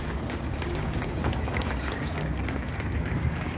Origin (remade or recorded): remade